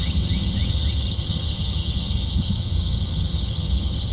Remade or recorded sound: remade